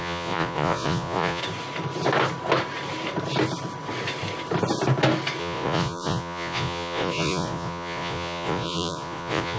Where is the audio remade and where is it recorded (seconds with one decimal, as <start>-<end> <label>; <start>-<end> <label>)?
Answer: 0.0-1.4 remade; 1.4-5.4 recorded; 5.4-9.6 remade